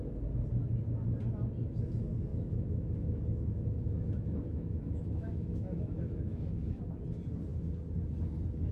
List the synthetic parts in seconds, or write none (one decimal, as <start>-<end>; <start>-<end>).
2.3-6.8